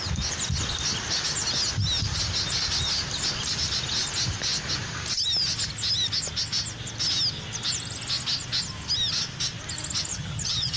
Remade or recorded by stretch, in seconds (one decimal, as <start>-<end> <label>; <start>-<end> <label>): 0.0-10.1 recorded; 10.1-10.8 remade